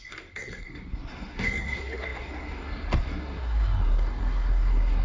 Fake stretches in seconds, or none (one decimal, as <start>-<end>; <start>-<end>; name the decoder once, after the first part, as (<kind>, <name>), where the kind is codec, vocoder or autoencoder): 0.0-5.0 (codec, SNAC)